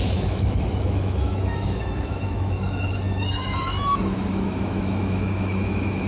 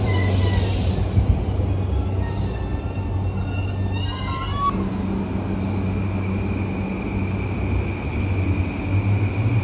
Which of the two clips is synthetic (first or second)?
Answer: first